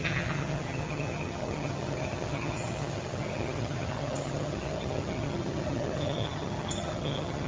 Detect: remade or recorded remade